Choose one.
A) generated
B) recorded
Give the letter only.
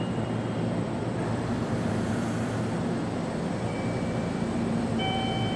A